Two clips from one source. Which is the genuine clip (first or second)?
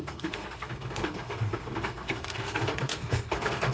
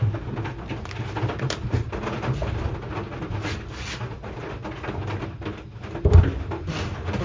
second